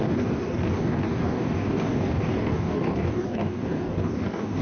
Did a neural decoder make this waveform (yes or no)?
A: yes